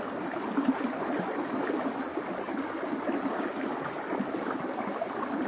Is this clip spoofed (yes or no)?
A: no